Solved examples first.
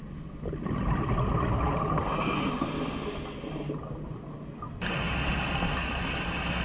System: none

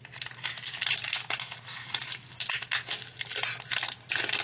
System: none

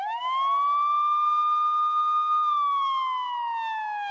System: none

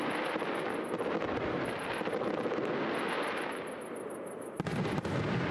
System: none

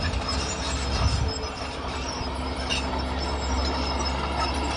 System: none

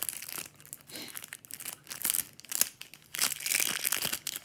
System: none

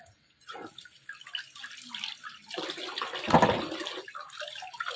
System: none